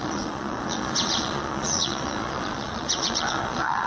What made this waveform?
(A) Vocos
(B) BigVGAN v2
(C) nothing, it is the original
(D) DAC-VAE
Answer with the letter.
A